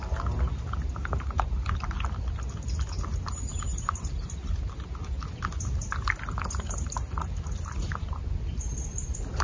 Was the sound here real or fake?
real